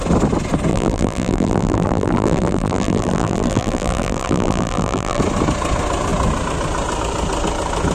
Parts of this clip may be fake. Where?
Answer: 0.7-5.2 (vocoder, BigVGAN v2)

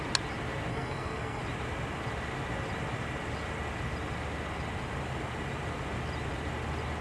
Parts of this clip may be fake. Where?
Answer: 0.7-1.4 (codec, SNAC)

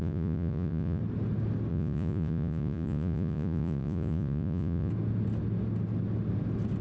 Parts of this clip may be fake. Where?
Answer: 0.0-1.0 (vocoder, Vocos); 1.7-4.9

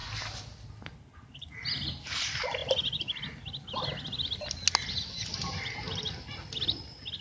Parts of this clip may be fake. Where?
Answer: none

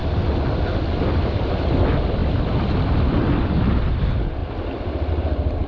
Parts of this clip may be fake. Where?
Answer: 1.1-4.4 (vocoder, BigVGAN v2); 5.1-5.7

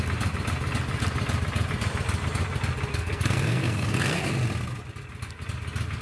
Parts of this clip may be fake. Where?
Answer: 2.9-4.3 (codec, SNAC)

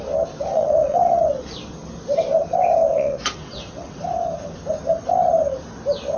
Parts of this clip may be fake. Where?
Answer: 0.5-1.3 (vocoder, WaveNeXt); 2.9-4.0